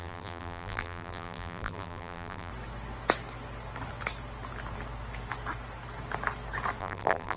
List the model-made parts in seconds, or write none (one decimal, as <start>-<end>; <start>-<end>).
0.0-2.5; 6.8-7.4